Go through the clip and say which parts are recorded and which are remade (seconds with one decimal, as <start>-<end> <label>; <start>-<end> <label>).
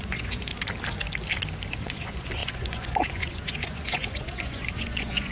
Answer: 0.0-0.5 remade; 0.5-1.8 recorded; 1.8-5.3 remade